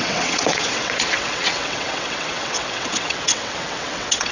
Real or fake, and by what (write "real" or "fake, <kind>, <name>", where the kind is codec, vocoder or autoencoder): fake, vocoder, WaveNeXt